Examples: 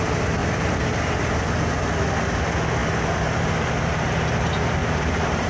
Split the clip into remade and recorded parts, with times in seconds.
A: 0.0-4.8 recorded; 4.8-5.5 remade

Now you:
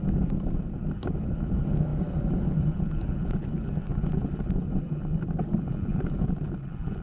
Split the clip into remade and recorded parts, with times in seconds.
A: 0.0-1.9 recorded; 1.9-2.5 remade; 2.5-3.9 recorded; 3.9-6.2 remade; 6.2-7.0 recorded

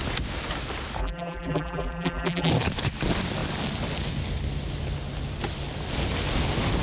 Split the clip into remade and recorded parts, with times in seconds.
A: 0.0-1.0 recorded; 1.0-2.5 remade; 2.5-6.8 recorded

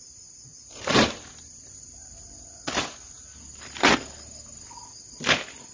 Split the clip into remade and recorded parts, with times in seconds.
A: 0.0-2.0 remade; 2.0-5.7 recorded